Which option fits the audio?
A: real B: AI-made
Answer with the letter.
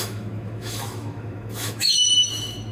B